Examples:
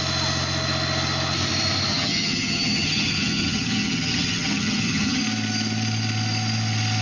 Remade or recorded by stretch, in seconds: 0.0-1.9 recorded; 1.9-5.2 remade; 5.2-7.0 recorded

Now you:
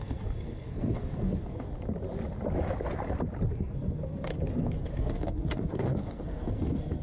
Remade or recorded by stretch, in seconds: 0.0-1.7 remade; 1.7-3.5 recorded; 3.5-4.3 remade; 4.3-4.9 recorded; 4.9-7.0 remade